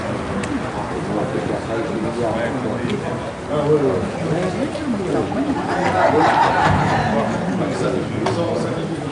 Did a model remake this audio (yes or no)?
no